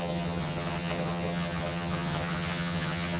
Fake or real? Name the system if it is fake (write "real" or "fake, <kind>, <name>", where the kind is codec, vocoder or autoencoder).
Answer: fake, vocoder, HiFi-GAN